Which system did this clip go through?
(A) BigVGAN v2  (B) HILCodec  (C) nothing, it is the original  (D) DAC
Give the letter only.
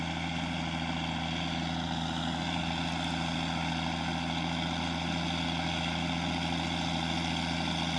C